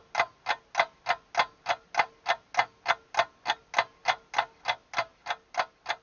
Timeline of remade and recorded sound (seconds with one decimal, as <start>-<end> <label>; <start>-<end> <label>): 0.0-6.0 recorded